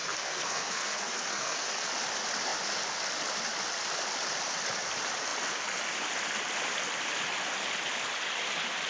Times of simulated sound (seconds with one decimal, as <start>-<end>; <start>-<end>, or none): 0.0-1.9